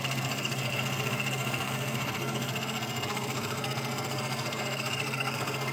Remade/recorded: remade